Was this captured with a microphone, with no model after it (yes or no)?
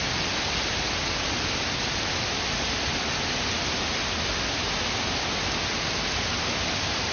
yes